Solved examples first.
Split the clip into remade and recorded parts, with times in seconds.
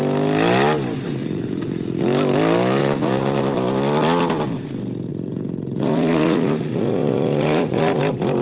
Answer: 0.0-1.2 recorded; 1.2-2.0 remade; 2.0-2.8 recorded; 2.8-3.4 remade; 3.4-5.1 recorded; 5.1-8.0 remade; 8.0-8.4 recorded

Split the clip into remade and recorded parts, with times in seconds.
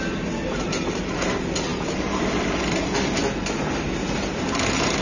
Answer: 0.0-5.0 recorded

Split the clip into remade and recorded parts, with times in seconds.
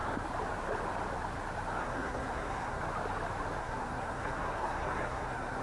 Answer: 0.0-1.8 recorded; 1.8-2.8 remade; 2.8-3.6 recorded; 3.6-5.6 remade